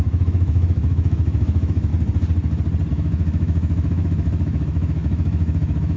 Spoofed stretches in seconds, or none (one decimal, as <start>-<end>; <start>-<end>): 0.0-1.9; 2.9-6.0